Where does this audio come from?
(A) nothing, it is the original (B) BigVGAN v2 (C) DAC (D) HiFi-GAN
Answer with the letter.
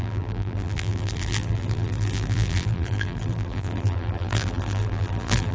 B